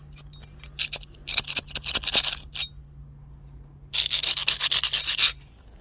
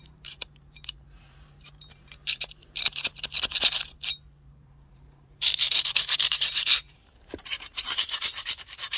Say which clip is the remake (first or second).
second